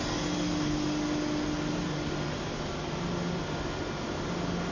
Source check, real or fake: real